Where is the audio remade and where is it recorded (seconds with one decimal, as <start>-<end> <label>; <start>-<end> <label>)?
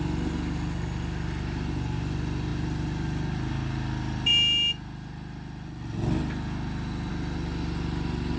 0.0-8.4 recorded